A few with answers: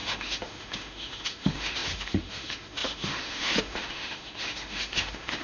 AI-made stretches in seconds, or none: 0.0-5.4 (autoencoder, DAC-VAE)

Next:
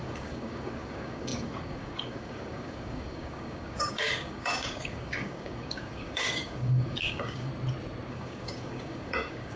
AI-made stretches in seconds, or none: 0.0-7.5 (codec, DAC); 8.1-9.6

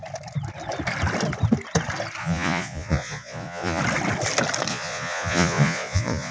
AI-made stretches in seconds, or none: 2.2-3.8 (vocoder, Vocos); 4.7-6.3